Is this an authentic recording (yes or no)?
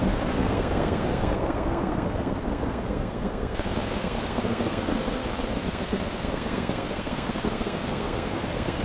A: no